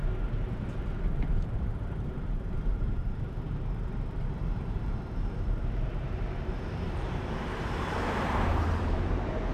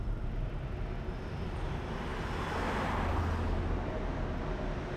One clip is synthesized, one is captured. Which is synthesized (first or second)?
first